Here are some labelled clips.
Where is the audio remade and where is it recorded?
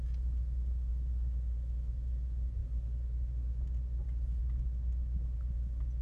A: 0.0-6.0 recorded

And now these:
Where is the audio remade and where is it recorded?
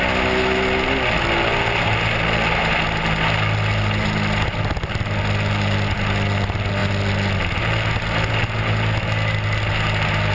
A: 0.0-10.3 recorded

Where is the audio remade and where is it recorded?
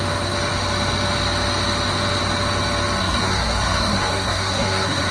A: 0.0-3.0 recorded; 3.0-5.1 remade